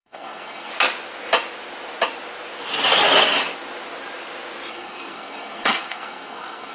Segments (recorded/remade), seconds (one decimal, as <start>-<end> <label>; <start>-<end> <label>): 0.0-0.7 remade; 0.7-4.7 recorded; 4.7-6.7 remade

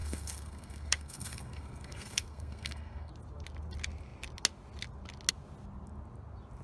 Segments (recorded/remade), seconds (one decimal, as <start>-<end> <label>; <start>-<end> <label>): 0.0-3.1 remade; 3.1-6.6 recorded

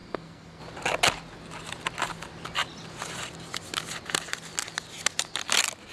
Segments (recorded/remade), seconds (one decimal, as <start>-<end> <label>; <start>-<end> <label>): 0.0-0.6 remade; 0.6-5.9 recorded

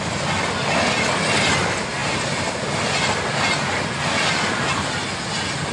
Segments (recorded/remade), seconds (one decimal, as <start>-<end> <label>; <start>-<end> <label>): 0.0-5.7 recorded

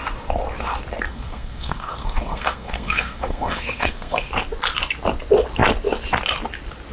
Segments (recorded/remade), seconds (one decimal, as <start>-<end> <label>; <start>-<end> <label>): 0.0-1.1 recorded; 1.1-4.3 remade; 4.3-6.9 recorded

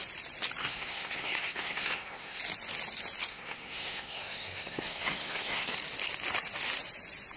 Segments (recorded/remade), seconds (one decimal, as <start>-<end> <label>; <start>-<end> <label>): 0.0-0.6 recorded; 0.6-2.4 remade; 2.4-3.3 recorded; 3.3-5.7 remade; 5.7-7.4 recorded

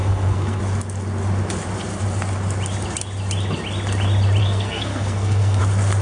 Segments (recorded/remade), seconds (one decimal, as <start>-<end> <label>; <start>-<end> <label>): 0.0-0.6 remade; 0.6-4.4 recorded; 4.4-5.6 remade; 5.6-6.0 recorded